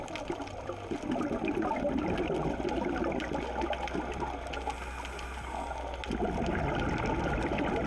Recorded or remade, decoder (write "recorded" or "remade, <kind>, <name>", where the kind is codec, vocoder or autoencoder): recorded